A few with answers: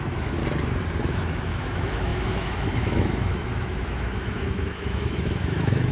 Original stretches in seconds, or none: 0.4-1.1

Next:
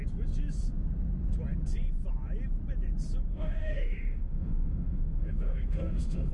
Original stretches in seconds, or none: 0.0-3.3

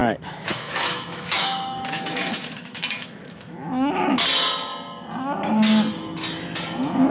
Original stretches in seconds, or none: 4.2-7.1

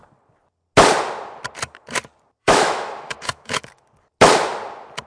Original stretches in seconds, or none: 0.0-2.4; 3.8-5.1

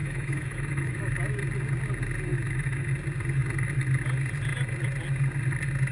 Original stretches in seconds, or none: 1.2-2.3; 2.9-5.9